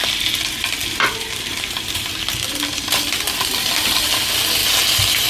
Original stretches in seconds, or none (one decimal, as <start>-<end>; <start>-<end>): 0.0-0.8; 4.0-4.6